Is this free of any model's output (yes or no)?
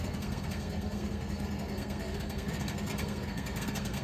no